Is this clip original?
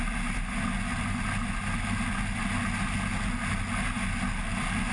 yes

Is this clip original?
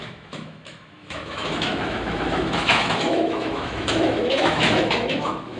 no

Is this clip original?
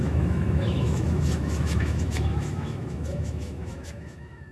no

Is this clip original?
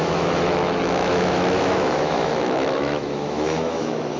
no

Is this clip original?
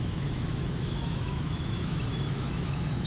no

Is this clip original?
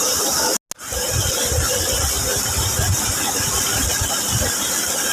yes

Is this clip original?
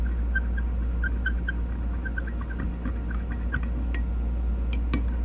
yes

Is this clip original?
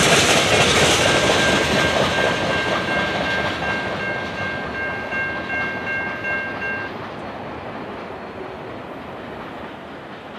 yes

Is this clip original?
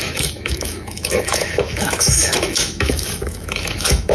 no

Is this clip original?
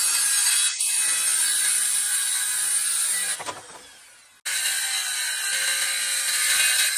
yes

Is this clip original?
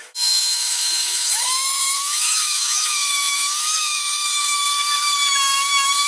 no